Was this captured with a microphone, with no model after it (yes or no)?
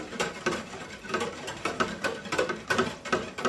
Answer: no